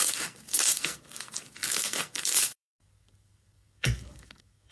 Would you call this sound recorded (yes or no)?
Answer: no